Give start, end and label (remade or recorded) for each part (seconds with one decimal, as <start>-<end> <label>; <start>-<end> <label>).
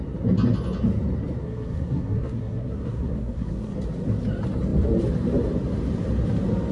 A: 0.0-1.4 recorded; 1.4-3.7 remade; 3.7-6.7 recorded